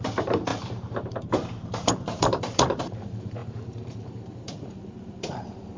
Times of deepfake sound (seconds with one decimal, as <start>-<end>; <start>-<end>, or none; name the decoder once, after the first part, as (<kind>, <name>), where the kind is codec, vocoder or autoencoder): 0.0-5.8 (vocoder, BigVGAN v2)